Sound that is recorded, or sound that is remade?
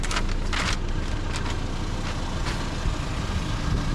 recorded